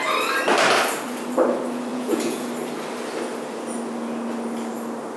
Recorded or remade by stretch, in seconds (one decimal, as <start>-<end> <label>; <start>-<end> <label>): 0.0-1.9 recorded; 1.9-2.5 remade; 2.5-5.2 recorded